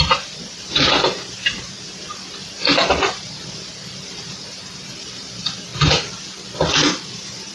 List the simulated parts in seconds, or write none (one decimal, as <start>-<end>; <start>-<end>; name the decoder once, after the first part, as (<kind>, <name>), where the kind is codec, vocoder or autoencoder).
0.0-5.7 (vocoder, BigVGAN v2); 7.1-7.5